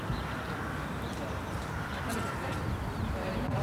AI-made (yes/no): no